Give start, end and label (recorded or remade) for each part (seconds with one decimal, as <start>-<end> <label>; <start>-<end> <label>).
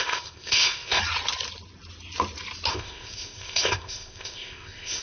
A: 0.0-1.0 remade; 1.0-2.7 recorded; 2.7-5.0 remade